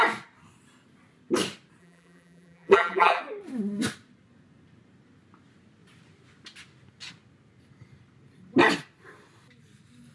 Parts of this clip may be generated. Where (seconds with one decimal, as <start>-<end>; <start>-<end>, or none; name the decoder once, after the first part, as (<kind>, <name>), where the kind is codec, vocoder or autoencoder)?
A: 1.8-3.2 (vocoder, BigVGAN v2)